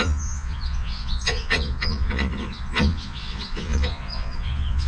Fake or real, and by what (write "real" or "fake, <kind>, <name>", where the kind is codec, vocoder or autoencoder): fake, vocoder, Vocos